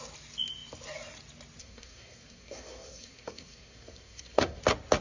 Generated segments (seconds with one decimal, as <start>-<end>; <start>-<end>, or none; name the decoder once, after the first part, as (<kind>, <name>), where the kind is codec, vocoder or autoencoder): 1.6-4.6 (codec, SNAC)